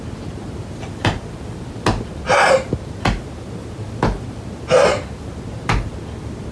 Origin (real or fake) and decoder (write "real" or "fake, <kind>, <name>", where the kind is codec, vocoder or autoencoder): real